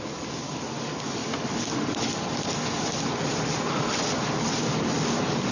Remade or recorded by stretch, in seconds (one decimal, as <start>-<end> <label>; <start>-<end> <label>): 0.0-5.5 recorded

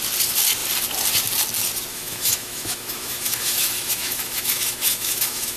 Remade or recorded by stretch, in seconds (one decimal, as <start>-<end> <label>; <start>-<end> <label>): 0.0-1.9 recorded; 1.9-5.6 remade

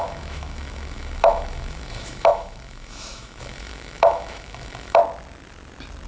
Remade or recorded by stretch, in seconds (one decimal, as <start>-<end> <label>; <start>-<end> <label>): 0.0-5.0 remade; 5.0-6.1 recorded

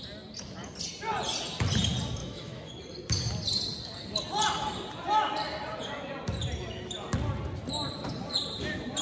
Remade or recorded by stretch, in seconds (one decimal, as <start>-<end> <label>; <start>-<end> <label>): 0.0-2.2 recorded; 2.2-2.7 remade; 2.7-9.0 recorded

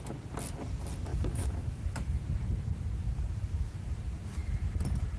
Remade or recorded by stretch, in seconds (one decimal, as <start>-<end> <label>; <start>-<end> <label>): 0.0-1.1 recorded; 1.1-2.2 remade; 2.2-5.2 recorded

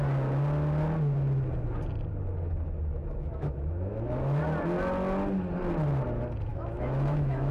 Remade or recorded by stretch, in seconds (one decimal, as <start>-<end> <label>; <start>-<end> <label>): 0.0-3.0 recorded; 3.0-4.4 remade; 4.4-6.5 recorded; 6.5-7.5 remade

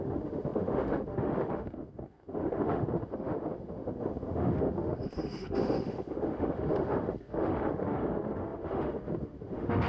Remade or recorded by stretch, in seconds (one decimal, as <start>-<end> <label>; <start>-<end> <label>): 0.0-9.9 remade